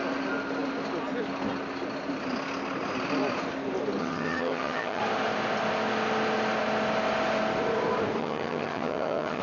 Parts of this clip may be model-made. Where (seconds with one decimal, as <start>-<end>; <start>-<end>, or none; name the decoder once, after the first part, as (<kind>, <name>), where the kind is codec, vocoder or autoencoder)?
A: 4.0-5.0 (vocoder, HiFi-GAN); 8.2-9.4